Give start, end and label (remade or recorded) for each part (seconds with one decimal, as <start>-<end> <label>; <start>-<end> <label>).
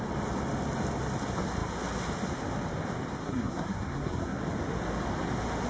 0.0-3.2 recorded; 3.2-4.4 remade; 4.4-5.7 recorded